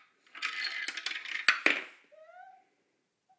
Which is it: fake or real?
real